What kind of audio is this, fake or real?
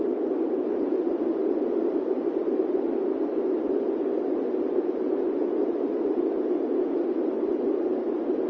real